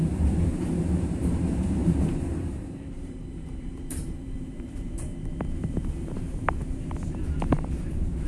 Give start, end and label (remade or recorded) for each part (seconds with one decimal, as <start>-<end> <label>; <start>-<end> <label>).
0.0-5.1 remade; 5.1-5.6 recorded; 5.6-8.3 remade